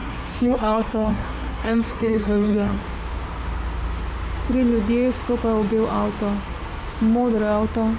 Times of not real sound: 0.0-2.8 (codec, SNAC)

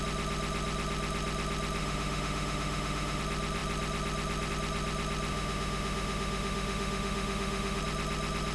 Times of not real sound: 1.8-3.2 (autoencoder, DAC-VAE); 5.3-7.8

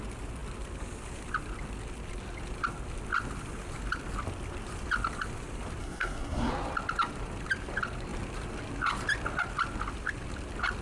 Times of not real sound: 5.8-6.5 (codec, SNAC)